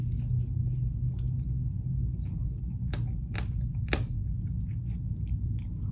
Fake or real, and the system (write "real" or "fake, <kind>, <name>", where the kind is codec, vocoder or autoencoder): real